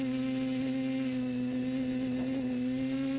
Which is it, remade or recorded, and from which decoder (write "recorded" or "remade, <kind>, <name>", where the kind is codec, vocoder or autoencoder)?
recorded